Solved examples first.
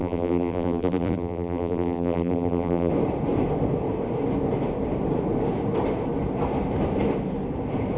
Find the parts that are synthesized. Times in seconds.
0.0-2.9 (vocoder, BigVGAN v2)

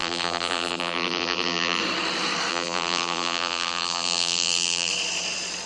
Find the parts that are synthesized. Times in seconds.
0.0-1.8 (vocoder, BigVGAN v2); 2.5-4.9

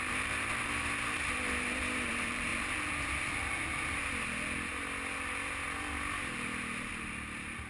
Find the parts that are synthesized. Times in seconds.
0.0-2.5 (vocoder, BigVGAN v2); 7.1-7.7

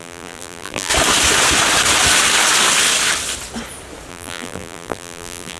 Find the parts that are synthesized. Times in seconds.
0.0-0.9 (vocoder, BigVGAN v2); 4.1-5.6